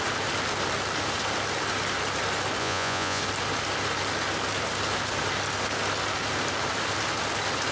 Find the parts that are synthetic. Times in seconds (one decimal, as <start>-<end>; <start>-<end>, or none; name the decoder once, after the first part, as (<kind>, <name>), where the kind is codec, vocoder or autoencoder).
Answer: 2.6-3.2 (vocoder, Vocos)